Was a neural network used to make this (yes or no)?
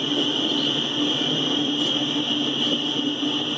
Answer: no